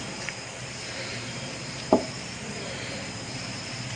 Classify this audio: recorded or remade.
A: remade